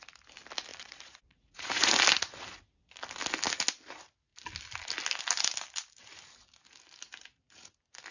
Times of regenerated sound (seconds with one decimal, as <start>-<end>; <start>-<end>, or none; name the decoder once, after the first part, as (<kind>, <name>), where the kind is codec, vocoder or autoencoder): 0.7-1.9 (vocoder, Vocos)